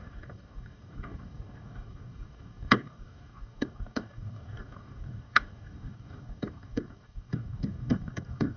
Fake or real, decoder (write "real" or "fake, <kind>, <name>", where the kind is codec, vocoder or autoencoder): fake, codec, DAC